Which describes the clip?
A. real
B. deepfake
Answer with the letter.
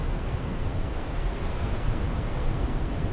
B